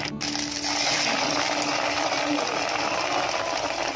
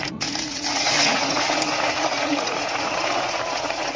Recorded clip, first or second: first